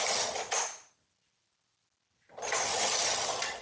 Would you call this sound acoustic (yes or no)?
yes